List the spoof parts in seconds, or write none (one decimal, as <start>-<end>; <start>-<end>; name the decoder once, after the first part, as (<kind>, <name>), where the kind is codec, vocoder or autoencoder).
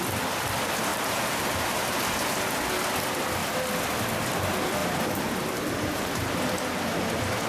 0.9-2.6 (vocoder, BigVGAN v2); 3.4-3.9; 4.8-6.4